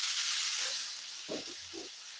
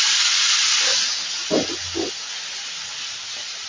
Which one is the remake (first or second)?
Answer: first